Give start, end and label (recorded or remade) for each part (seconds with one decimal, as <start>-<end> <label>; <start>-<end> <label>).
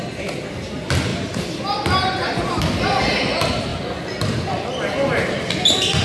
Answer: 0.0-1.1 recorded; 1.1-1.6 remade; 1.6-6.0 recorded